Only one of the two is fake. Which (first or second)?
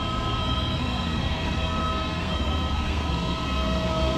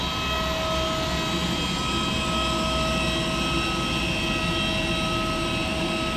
first